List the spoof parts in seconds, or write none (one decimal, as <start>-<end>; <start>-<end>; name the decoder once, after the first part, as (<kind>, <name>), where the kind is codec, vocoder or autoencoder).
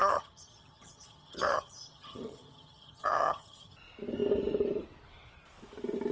0.0-3.7 (vocoder, HiFi-GAN)